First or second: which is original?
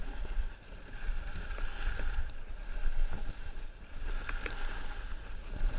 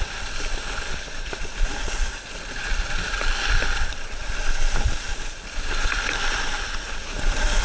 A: first